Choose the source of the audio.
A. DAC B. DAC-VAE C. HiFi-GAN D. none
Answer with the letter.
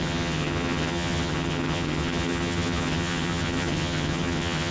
C